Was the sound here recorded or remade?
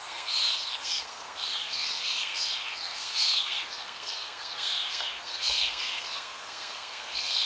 remade